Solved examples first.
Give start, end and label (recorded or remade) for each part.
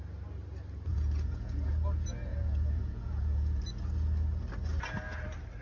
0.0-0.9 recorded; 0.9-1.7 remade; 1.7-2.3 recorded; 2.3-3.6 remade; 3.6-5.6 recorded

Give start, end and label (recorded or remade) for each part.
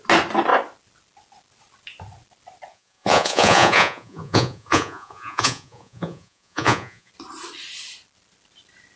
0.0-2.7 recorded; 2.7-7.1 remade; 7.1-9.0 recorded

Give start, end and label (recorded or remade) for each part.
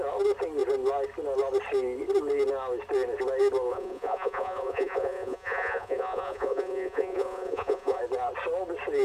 0.0-3.7 recorded; 3.7-8.0 remade; 8.0-9.0 recorded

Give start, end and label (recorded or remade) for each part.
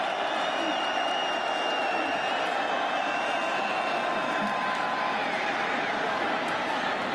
0.0-5.2 recorded; 5.2-6.5 remade; 6.5-7.1 recorded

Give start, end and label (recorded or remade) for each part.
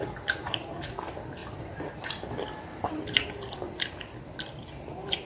0.0-1.4 recorded; 1.4-4.2 remade; 4.2-5.2 recorded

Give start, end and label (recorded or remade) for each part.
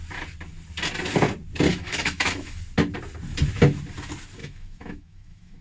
0.0-1.7 recorded; 1.7-2.6 remade; 2.6-4.4 recorded; 4.4-5.6 remade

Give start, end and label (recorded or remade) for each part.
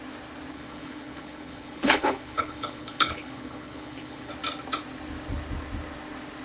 0.0-0.5 recorded; 0.5-4.3 remade; 4.3-6.4 recorded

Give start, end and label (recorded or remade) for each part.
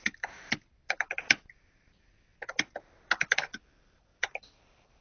0.0-2.3 remade; 2.3-3.8 recorded; 3.8-5.0 remade